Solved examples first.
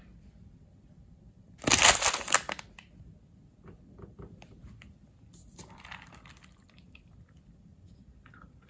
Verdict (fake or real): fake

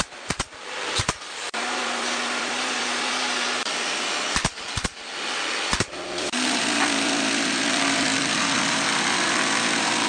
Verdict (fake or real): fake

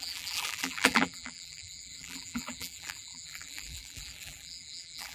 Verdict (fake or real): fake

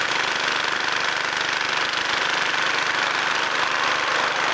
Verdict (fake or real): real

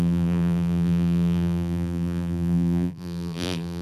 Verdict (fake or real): fake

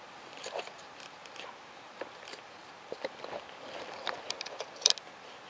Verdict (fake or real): real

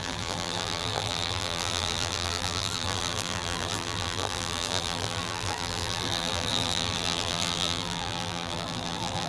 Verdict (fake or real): fake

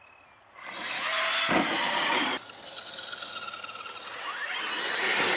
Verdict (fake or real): real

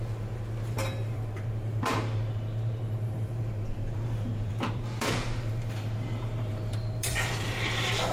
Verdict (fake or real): fake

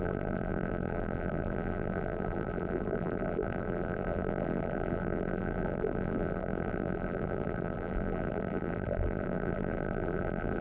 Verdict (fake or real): fake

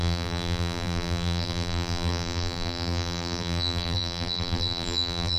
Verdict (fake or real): fake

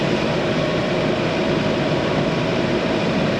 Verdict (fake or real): fake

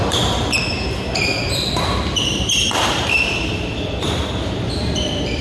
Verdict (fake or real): fake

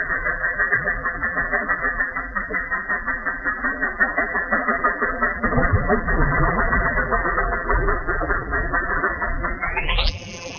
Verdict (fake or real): fake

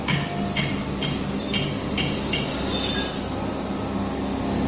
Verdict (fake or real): real